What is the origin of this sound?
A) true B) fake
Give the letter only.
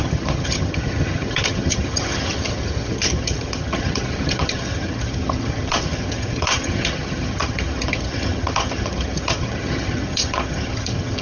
B